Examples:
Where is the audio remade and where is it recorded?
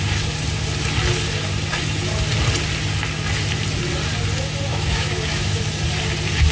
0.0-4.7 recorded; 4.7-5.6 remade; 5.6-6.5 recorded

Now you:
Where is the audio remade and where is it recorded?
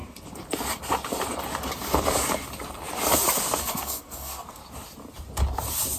0.0-3.6 recorded; 3.6-4.6 remade; 4.6-6.0 recorded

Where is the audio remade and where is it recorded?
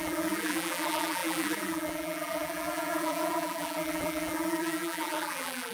0.0-5.7 remade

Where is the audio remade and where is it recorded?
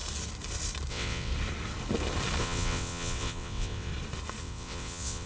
0.0-0.9 recorded; 0.9-1.3 remade; 1.3-2.4 recorded; 2.4-3.9 remade; 3.9-4.4 recorded; 4.4-5.3 remade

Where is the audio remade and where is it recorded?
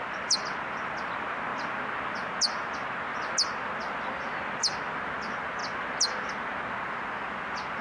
0.0-7.8 recorded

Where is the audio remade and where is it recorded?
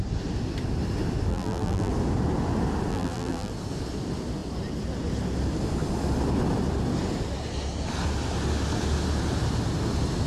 0.0-1.3 recorded; 1.3-1.9 remade; 1.9-2.9 recorded; 2.9-3.5 remade; 3.5-10.3 recorded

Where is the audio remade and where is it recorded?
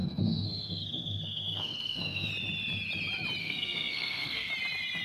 0.0-2.3 remade; 2.3-3.4 recorded; 3.4-4.5 remade; 4.5-5.0 recorded